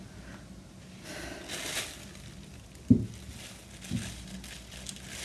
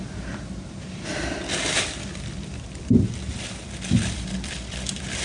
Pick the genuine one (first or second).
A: first